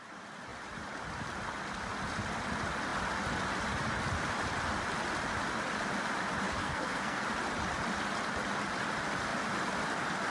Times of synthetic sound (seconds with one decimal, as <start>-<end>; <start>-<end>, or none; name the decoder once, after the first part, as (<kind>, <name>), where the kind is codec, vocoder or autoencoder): 6.6-7.2 (codec, SNAC)